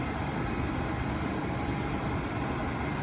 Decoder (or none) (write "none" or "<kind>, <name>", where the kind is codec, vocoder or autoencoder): none